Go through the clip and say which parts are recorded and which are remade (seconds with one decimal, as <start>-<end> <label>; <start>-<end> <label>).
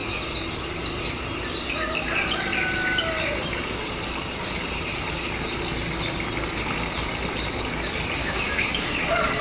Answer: 0.0-8.2 recorded; 8.2-9.0 remade; 9.0-9.4 recorded